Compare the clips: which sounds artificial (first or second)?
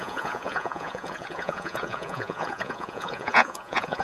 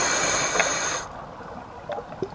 first